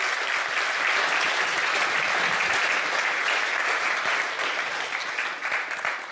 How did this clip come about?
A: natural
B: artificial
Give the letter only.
A